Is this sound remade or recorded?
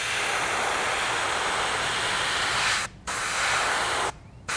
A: recorded